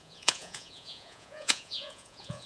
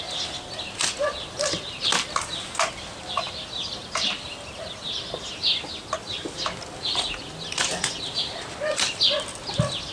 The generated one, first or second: first